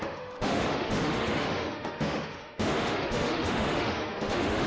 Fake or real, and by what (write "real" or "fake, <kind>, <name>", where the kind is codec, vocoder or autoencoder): fake, autoencoder, DAC-VAE